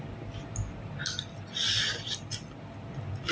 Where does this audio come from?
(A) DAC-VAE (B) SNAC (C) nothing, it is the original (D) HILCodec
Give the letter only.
C